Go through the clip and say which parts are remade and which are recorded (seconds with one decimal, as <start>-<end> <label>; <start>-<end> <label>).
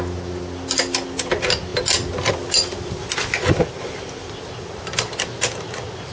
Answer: 0.0-6.1 recorded